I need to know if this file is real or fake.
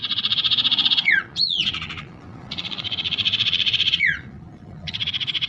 fake